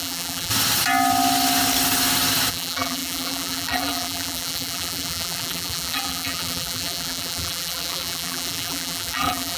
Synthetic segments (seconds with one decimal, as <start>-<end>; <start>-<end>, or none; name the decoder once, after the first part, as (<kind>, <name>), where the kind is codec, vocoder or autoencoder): 0.0-0.5 (vocoder, BigVGAN v2); 2.5-9.6